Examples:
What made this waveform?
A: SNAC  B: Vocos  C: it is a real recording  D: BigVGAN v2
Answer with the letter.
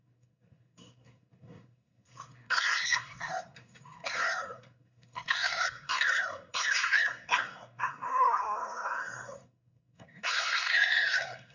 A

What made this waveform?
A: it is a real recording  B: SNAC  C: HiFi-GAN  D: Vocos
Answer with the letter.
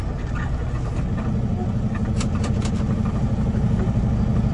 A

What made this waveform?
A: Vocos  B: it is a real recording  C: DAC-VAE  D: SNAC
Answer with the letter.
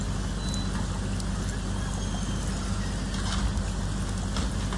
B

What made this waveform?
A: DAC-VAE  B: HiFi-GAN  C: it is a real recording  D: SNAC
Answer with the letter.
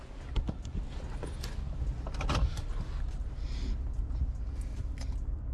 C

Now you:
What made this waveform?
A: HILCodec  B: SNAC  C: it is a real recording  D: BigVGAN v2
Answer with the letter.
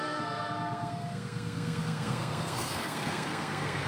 B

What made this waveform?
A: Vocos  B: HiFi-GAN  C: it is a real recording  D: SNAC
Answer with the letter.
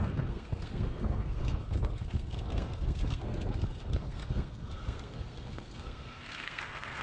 D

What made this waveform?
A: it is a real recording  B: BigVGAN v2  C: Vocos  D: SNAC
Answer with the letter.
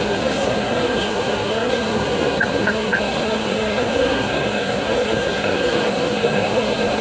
D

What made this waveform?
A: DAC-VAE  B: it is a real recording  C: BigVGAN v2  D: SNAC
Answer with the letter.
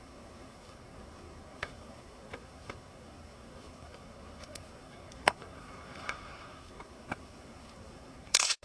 D